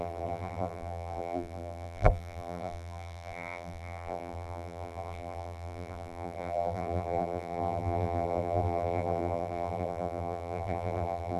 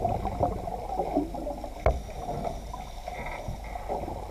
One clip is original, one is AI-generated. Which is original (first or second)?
second